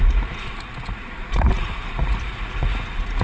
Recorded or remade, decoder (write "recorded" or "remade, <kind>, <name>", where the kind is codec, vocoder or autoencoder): remade, vocoder, Vocos